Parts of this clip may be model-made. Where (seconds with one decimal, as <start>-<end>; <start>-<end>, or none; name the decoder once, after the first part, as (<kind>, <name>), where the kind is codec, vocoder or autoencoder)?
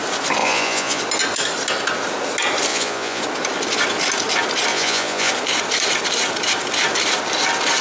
0.4-1.0 (vocoder, Vocos); 2.7-3.2; 4.7-5.3